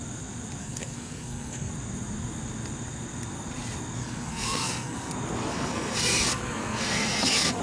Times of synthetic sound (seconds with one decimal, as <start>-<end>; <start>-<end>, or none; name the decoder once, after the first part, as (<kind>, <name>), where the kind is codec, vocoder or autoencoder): 0.6-1.7 (codec, SNAC); 4.0-5.1; 5.5-7.6